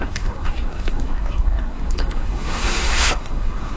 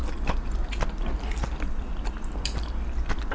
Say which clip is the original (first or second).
second